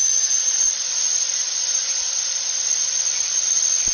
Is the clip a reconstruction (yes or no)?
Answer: yes